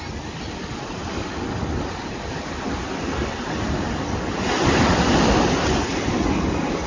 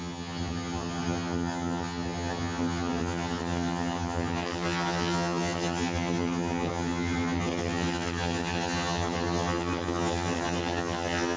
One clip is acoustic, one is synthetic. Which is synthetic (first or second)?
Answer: second